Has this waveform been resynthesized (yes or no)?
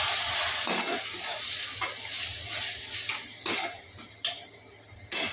no